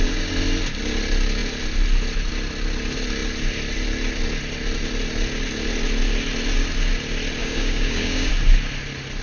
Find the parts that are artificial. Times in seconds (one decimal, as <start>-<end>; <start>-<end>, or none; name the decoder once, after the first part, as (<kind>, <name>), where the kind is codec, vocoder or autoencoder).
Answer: 7.4-8.3 (codec, DAC)